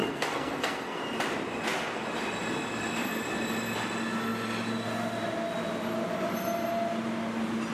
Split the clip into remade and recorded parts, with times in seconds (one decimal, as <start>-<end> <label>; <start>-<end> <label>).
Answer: 0.0-1.0 remade; 1.0-7.7 recorded

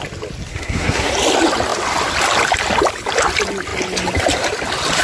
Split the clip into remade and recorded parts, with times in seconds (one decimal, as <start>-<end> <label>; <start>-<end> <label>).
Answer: 0.0-0.5 recorded; 0.5-1.1 remade; 1.1-5.0 recorded

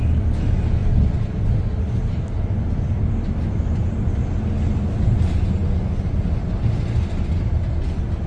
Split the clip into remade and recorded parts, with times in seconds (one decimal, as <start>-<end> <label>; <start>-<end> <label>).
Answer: 0.0-8.3 recorded

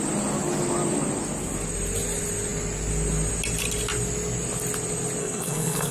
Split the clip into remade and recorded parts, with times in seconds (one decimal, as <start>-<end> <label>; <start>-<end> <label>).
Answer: 0.0-5.2 recorded; 5.2-5.9 remade

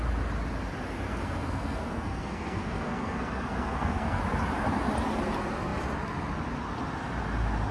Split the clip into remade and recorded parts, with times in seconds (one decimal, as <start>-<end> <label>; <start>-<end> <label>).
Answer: 0.0-1.1 recorded; 1.1-4.2 remade; 4.2-7.7 recorded